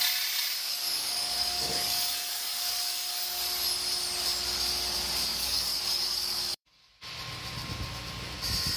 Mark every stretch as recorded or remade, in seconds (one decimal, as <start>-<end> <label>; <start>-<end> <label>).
0.0-0.6 recorded; 0.6-3.2 remade; 3.2-5.3 recorded; 5.3-6.9 remade; 6.9-8.8 recorded